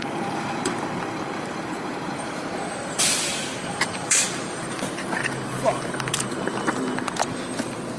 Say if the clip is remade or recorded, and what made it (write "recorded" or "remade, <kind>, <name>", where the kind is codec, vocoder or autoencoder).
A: remade, vocoder, BigVGAN v2